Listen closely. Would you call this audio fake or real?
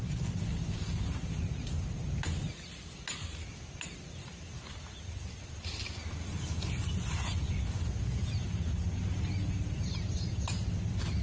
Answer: real